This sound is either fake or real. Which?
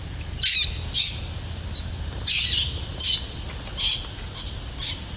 real